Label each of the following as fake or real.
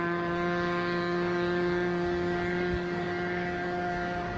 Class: fake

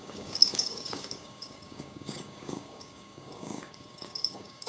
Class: fake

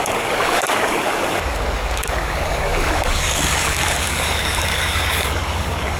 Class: fake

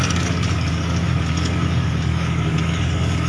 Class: fake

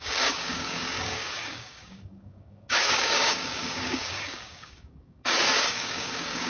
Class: fake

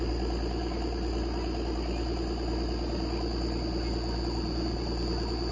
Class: real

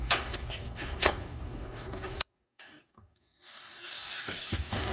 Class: fake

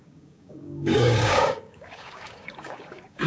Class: fake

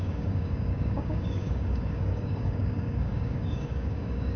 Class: fake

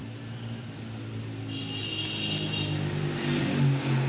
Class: real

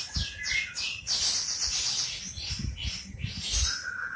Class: real